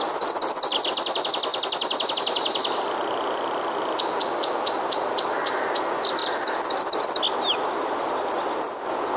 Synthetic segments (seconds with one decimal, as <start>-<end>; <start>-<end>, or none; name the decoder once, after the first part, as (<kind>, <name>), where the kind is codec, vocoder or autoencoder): none